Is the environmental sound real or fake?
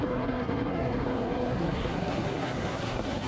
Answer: fake